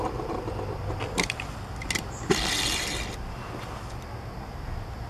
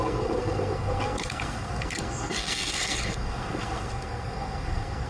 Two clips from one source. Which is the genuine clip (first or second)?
first